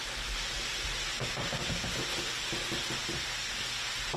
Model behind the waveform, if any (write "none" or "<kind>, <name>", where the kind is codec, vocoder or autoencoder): none